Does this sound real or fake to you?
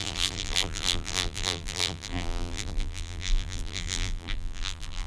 fake